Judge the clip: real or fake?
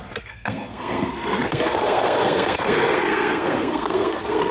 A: fake